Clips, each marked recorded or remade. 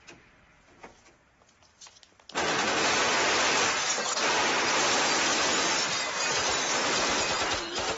recorded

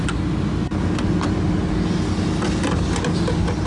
recorded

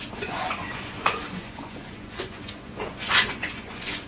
remade